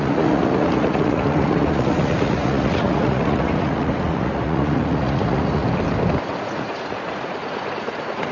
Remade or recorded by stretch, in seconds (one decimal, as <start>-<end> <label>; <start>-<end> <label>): 0.0-5.6 remade; 5.6-6.2 recorded; 6.2-8.3 remade